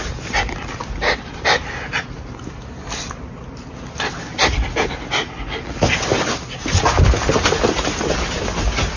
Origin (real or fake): real